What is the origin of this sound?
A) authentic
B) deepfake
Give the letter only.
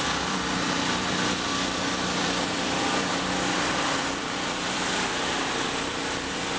B